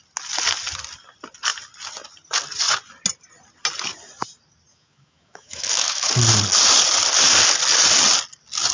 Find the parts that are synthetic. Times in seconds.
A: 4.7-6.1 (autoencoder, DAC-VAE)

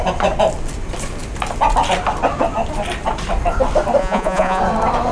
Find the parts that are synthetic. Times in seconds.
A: 4.0-4.6 (vocoder, Vocos)

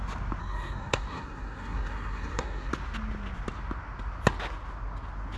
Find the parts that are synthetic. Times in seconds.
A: 0.4-2.7 (codec, SNAC)

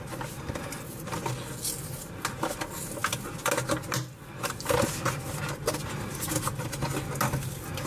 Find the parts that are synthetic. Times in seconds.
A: none

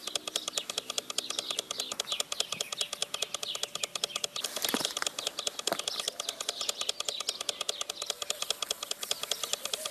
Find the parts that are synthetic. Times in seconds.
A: none